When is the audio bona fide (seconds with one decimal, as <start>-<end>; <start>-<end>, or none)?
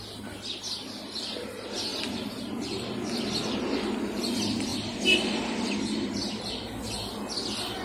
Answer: 0.0-7.8